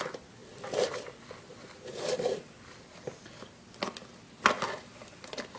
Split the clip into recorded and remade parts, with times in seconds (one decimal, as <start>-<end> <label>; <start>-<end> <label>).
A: 0.0-0.4 recorded; 0.4-1.3 remade; 1.3-5.6 recorded